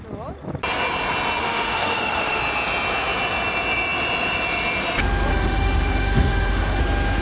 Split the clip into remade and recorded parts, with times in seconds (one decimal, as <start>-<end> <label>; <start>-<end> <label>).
0.0-1.4 recorded; 1.4-2.4 remade; 2.4-5.3 recorded; 5.3-6.8 remade; 6.8-7.2 recorded